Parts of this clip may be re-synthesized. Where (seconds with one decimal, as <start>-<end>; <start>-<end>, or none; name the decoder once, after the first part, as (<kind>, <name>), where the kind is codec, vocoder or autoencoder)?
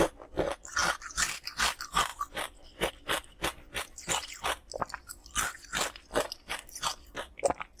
2.1-2.9 (vocoder, BigVGAN v2); 4.2-5.5